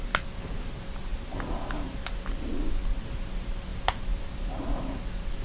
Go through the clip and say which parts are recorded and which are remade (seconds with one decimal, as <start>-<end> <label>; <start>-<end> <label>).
0.0-5.4 recorded